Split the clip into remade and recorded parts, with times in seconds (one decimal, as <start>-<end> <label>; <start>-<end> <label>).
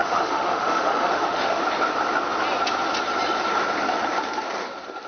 0.0-1.6 remade; 1.6-5.1 recorded